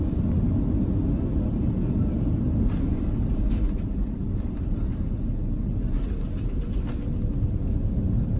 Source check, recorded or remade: recorded